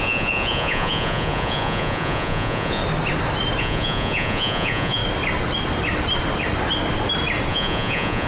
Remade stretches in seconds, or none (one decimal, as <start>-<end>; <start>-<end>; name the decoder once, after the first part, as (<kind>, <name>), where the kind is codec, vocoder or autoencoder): 0.0-2.8 (vocoder, Vocos); 3.6-5.0; 7.5-8.3